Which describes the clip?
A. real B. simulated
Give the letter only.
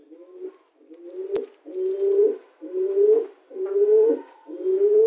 A